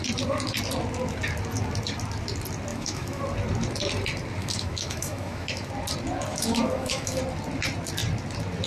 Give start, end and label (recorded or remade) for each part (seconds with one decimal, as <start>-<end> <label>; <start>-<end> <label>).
0.0-2.7 recorded; 2.7-3.2 remade; 3.2-4.4 recorded; 4.4-5.7 remade; 5.7-6.3 recorded; 6.3-7.2 remade; 7.2-8.7 recorded